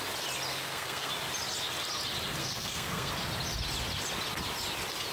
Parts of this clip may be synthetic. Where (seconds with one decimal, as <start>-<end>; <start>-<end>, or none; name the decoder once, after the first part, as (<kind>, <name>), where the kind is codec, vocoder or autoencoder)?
0.5-1.1 (codec, SNAC); 2.4-3.1